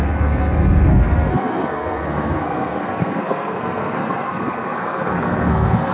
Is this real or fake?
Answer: fake